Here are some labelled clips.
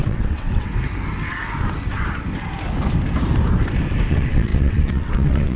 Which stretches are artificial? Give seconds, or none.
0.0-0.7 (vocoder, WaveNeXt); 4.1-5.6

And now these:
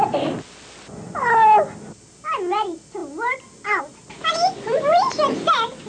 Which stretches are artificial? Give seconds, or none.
none